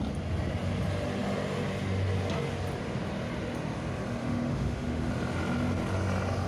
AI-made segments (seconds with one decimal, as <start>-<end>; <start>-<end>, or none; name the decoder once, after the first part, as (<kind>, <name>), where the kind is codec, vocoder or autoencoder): 4.2-5.1 (autoencoder, DAC-VAE)